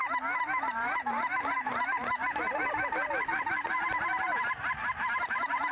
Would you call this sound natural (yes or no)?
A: yes